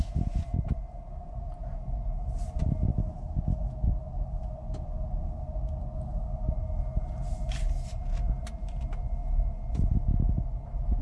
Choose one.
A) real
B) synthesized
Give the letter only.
A